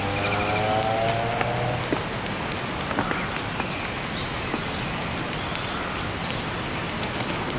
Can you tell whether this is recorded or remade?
recorded